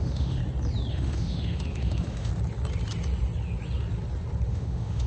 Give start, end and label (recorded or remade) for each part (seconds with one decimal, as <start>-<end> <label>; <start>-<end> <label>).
0.0-0.4 remade; 0.4-0.9 recorded; 0.9-2.3 remade; 2.3-4.5 recorded; 4.5-5.1 remade

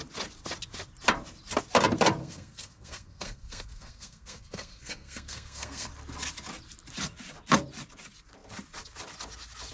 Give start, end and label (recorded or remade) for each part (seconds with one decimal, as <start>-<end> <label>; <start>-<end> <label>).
0.0-2.2 recorded; 2.2-5.9 remade; 5.9-9.7 recorded

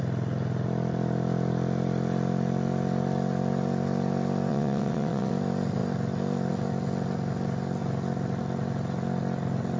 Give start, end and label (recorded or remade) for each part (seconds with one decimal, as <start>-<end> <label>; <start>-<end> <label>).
0.0-4.5 recorded; 4.5-5.3 remade; 5.3-9.8 recorded

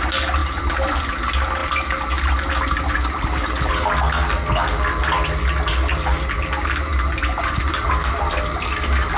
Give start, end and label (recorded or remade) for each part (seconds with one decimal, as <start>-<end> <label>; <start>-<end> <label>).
0.0-0.4 recorded; 0.4-1.0 remade; 1.0-9.2 recorded